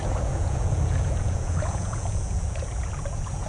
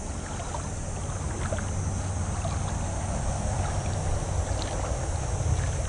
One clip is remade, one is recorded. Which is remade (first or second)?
first